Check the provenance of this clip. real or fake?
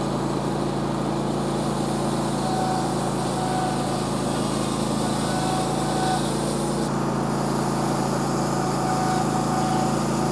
real